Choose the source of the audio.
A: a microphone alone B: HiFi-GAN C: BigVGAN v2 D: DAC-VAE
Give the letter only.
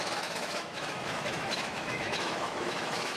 D